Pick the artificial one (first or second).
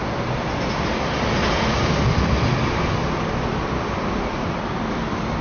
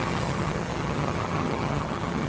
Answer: second